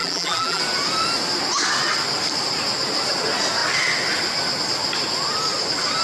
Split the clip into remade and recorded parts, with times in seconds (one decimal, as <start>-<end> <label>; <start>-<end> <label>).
0.0-0.6 remade; 0.6-6.0 recorded

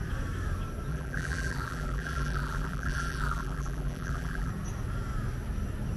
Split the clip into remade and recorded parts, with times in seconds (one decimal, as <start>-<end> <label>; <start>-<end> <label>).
0.0-0.9 recorded; 0.9-4.5 remade; 4.5-6.0 recorded

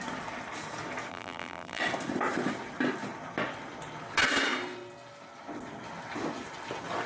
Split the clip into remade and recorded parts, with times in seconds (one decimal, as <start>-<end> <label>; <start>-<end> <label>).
0.0-1.1 recorded; 1.1-1.8 remade; 1.8-7.1 recorded